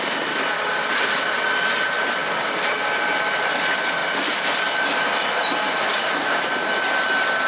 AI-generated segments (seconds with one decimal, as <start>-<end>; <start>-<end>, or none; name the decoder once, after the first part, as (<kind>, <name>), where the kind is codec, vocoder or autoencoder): none